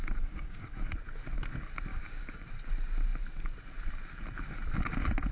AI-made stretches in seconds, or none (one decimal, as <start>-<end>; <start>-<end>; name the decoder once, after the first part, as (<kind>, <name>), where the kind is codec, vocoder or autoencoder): 0.0-0.8 (codec, DAC); 1.9-2.5